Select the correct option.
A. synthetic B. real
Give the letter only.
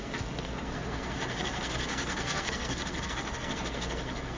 A